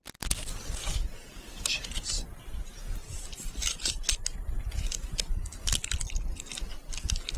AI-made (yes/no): no